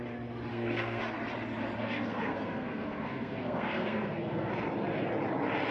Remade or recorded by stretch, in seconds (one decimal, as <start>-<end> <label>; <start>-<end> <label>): 0.0-0.5 recorded; 0.5-1.0 remade; 1.0-1.8 recorded; 1.8-4.5 remade; 4.5-5.7 recorded